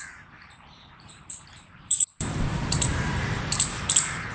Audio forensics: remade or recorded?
remade